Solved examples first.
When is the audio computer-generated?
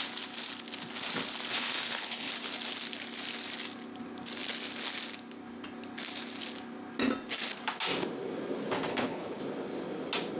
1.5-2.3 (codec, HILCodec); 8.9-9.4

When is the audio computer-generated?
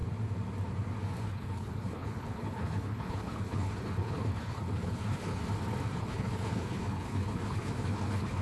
1.2-5.4 (codec, HILCodec); 6.0-8.4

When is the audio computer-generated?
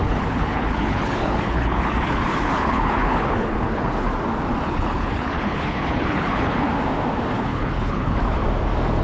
0.0-4.1 (codec, HILCodec); 4.6-6.7; 7.3-8.4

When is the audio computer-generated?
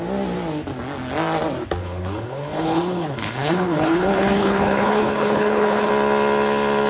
1.8-5.9 (codec, HILCodec)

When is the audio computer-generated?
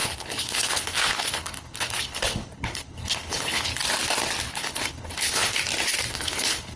0.0-3.7 (codec, HILCodec); 4.5-5.6; 6.1-6.8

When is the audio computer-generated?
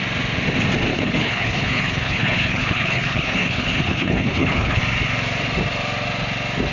0.9-4.8 (codec, HILCodec)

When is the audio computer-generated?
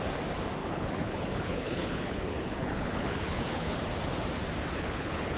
0.6-3.8 (codec, HILCodec); 4.7-5.4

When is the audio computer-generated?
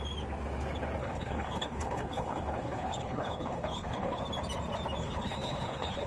1.0-4.2 (codec, HILCodec); 5.0-6.1